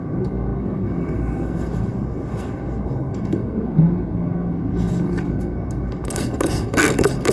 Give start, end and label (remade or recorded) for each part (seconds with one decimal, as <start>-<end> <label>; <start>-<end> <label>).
0.0-7.3 remade